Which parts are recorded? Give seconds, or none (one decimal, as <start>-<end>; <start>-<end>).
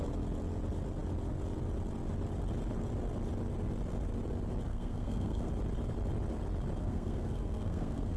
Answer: 0.0-4.7; 5.5-6.8